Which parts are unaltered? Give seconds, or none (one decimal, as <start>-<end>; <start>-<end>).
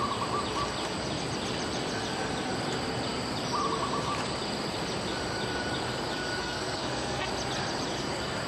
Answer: 0.0-6.4; 7.3-8.5